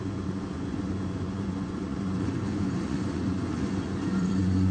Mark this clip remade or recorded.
remade